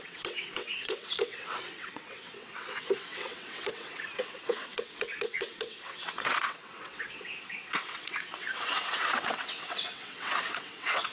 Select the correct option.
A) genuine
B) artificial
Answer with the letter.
B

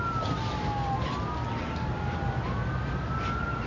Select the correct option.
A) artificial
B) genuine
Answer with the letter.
B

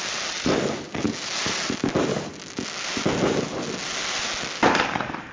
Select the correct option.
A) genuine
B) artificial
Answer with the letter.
A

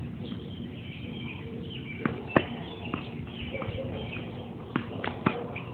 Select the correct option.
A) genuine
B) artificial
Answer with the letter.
B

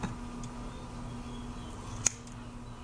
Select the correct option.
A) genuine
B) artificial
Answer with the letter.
A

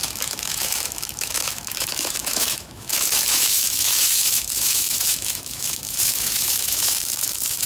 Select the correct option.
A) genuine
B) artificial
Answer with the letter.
B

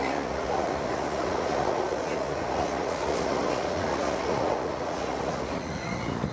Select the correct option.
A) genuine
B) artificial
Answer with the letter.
B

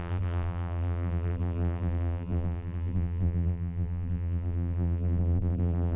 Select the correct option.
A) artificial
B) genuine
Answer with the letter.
A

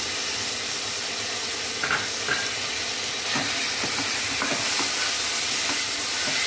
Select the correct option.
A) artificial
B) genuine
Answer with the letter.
B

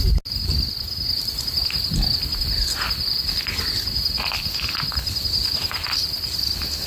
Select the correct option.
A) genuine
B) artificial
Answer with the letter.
A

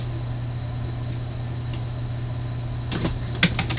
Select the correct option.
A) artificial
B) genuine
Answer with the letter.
B